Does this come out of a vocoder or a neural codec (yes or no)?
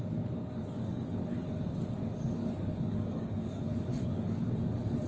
yes